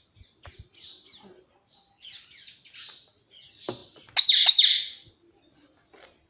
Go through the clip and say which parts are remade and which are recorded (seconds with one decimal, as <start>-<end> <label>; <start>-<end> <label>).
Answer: 0.0-6.3 recorded